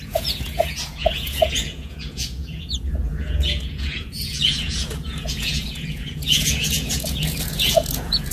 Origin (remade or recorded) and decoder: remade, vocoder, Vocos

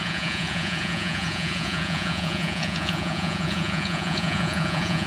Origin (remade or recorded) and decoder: remade, vocoder, Vocos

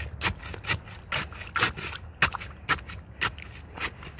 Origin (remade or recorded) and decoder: recorded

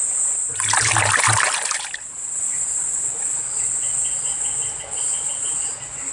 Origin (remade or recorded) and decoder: recorded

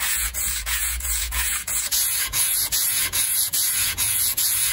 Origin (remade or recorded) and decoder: remade, vocoder, Vocos